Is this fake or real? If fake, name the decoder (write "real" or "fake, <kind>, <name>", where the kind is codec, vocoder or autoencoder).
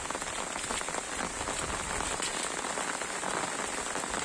real